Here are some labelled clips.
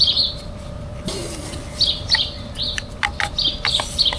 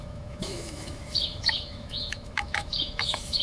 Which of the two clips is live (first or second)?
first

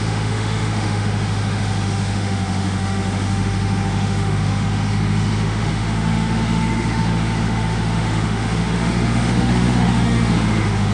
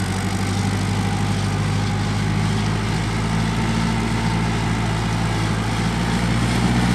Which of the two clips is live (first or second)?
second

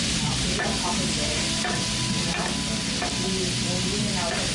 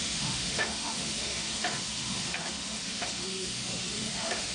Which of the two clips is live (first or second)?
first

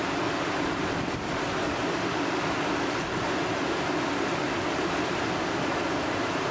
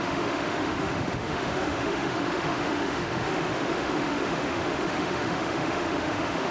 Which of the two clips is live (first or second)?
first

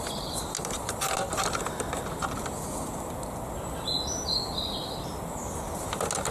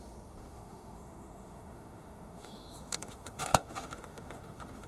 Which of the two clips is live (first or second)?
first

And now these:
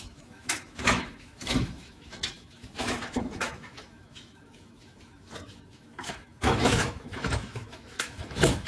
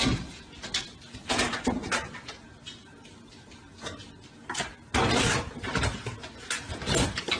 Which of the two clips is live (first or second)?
second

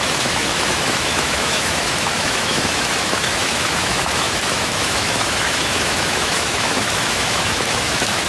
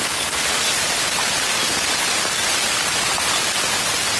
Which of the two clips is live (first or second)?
second